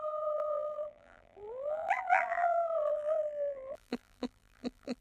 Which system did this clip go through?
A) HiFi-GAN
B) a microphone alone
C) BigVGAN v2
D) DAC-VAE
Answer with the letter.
C